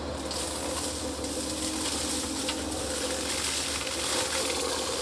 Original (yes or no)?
yes